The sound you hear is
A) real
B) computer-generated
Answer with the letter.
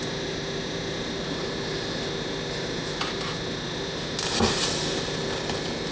A